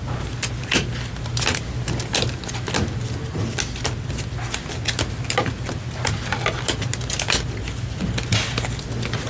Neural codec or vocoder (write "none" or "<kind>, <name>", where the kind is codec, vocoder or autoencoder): none